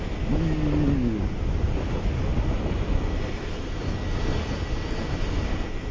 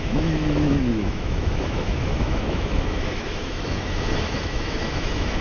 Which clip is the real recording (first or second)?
first